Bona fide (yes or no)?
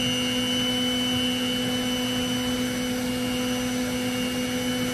yes